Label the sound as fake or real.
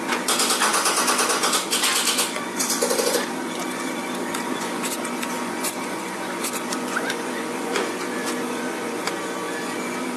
fake